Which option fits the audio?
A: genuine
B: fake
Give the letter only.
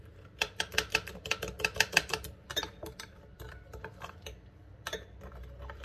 B